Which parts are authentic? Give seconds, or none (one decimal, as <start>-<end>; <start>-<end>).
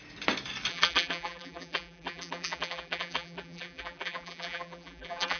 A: 0.0-0.7